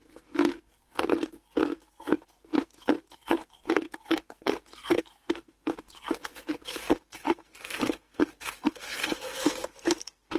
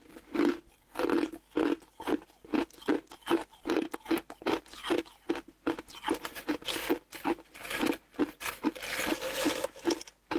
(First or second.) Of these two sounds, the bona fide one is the second